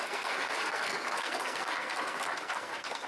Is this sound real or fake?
fake